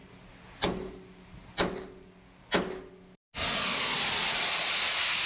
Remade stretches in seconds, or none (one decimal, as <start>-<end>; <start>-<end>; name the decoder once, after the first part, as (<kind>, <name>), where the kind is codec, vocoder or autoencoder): none